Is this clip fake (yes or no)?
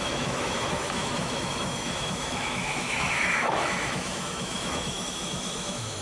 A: yes